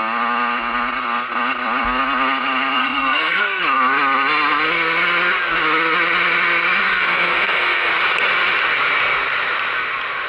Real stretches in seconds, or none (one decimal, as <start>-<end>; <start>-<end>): 0.0-2.8; 3.6-6.9; 7.9-10.3

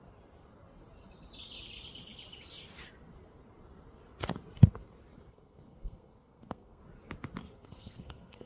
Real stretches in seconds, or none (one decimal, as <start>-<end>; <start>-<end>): 0.0-5.3; 6.8-7.4

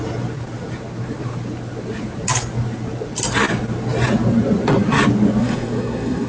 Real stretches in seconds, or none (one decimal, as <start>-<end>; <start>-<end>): 0.0-5.4